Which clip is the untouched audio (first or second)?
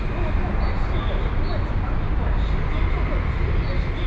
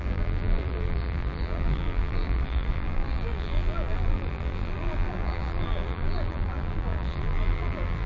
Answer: first